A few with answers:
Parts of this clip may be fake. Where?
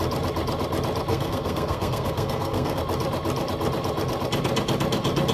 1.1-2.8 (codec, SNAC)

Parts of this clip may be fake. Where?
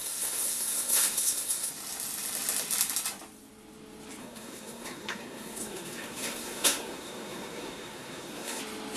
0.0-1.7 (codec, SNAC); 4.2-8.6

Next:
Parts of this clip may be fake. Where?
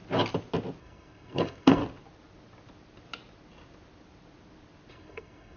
0.8-1.8 (codec, SNAC); 4.9-5.6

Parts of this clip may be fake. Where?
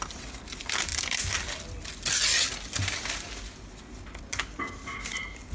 none